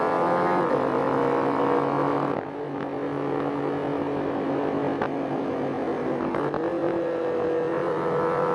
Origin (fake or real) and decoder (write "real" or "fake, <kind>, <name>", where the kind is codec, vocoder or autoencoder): real